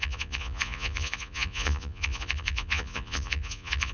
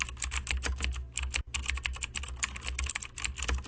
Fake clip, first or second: first